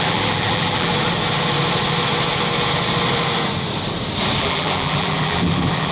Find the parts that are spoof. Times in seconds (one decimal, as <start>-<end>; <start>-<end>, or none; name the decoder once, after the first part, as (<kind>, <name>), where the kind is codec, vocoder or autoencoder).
0.0-0.9 (vocoder, BigVGAN v2); 4.4-5.9